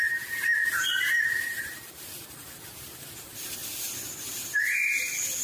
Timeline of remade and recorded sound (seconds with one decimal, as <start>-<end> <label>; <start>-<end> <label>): 0.0-3.6 remade; 3.6-4.3 recorded; 4.3-5.4 remade

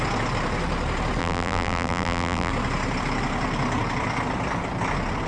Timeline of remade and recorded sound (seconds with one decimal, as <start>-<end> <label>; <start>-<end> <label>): 0.0-1.2 recorded; 1.2-2.5 remade; 2.5-5.3 recorded

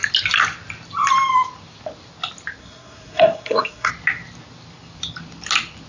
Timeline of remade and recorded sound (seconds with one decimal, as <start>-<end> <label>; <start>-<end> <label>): 0.0-2.6 recorded; 2.6-3.9 remade; 3.9-5.9 recorded

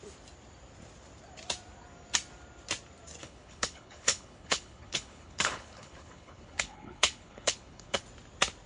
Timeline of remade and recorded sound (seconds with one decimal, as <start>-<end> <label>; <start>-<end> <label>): 0.0-3.2 recorded; 3.2-8.0 remade; 8.0-8.7 recorded

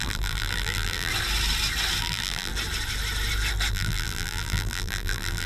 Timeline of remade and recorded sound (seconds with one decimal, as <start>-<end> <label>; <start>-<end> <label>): 0.0-1.1 remade; 1.1-2.0 recorded; 2.0-2.5 remade; 2.5-3.7 recorded; 3.7-5.5 remade

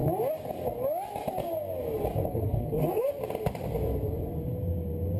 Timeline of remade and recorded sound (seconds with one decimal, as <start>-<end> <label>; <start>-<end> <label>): 0.0-2.3 recorded; 2.3-3.1 remade; 3.1-5.2 recorded